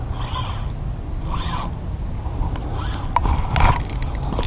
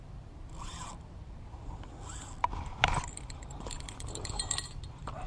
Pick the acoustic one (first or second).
first